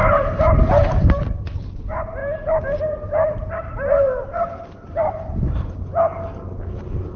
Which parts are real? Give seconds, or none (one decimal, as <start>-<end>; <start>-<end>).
1.2-2.2; 5.8-7.2